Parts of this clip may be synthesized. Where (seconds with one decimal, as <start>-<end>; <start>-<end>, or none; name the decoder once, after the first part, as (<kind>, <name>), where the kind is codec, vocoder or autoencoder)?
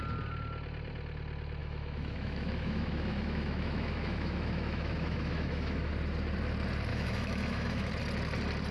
1.6-5.9 (autoencoder, DAC-VAE); 6.9-7.9